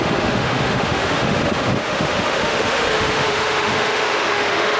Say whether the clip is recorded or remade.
remade